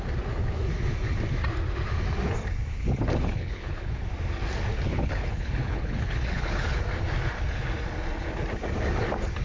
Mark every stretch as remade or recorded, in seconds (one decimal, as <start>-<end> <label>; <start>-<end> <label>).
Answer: 0.0-2.7 recorded; 2.7-4.0 remade; 4.0-4.9 recorded; 4.9-6.8 remade; 6.8-9.4 recorded